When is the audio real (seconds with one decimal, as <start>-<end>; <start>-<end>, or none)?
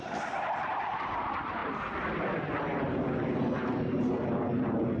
none